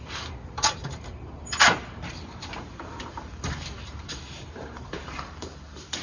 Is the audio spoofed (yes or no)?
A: yes